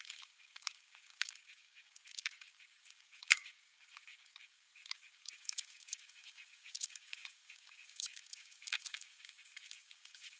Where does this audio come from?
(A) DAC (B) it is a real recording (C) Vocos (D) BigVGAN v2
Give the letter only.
A